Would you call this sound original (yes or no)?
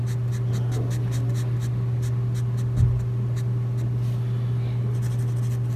yes